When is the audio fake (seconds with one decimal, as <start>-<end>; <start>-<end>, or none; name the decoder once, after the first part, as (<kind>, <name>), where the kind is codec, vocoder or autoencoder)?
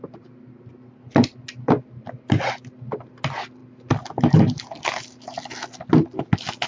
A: none